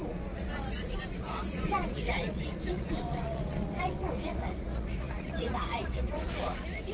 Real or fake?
fake